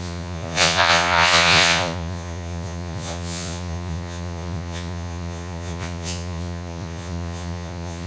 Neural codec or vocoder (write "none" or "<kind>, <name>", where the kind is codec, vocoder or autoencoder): vocoder, Vocos